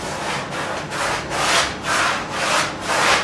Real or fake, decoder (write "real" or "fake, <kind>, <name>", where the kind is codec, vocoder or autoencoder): real